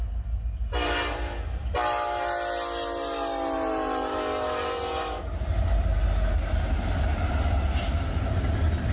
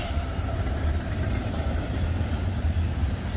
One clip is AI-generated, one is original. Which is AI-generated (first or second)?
second